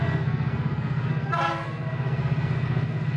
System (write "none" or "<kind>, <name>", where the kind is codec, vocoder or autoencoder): codec, SNAC